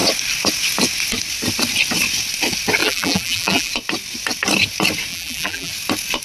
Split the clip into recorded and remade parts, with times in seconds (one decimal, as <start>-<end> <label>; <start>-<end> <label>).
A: 0.0-2.8 recorded; 2.8-3.7 remade; 3.7-5.1 recorded; 5.1-5.7 remade; 5.7-6.2 recorded